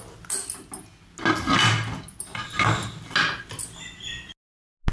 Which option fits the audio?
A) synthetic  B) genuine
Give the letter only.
B